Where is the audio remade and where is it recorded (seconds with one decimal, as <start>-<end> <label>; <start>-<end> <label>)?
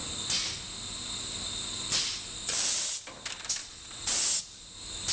0.0-3.6 recorded; 3.6-4.2 remade; 4.2-5.1 recorded